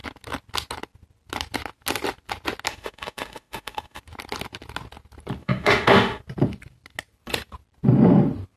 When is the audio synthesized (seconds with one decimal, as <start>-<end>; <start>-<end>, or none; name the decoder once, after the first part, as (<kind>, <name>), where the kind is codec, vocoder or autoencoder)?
2.7-4.0 (autoencoder, DAC-VAE); 5.4-6.2